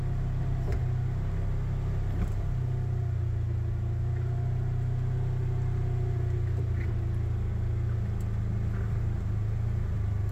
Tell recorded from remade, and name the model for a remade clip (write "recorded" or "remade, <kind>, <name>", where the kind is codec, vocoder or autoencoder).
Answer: recorded